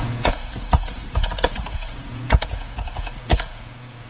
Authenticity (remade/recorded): remade